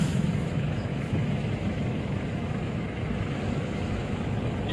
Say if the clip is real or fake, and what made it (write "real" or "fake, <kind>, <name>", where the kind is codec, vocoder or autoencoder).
fake, autoencoder, DAC-VAE